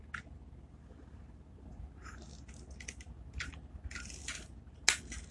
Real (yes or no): yes